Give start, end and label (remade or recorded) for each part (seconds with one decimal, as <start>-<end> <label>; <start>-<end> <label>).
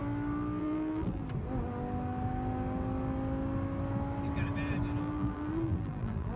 0.0-0.6 recorded; 0.6-1.2 remade; 1.2-5.0 recorded; 5.0-6.4 remade